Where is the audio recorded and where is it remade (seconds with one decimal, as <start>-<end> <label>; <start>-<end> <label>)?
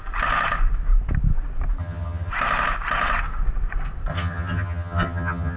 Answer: 0.0-1.8 recorded; 1.8-2.3 remade; 2.3-4.1 recorded; 4.1-5.6 remade